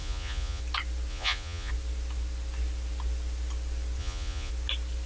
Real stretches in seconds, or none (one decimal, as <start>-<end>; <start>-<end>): 0.6-1.1; 1.7-4.0; 4.5-5.1